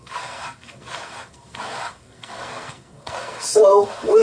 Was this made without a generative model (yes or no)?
no